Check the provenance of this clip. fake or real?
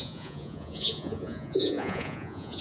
fake